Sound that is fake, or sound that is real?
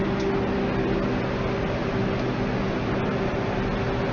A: real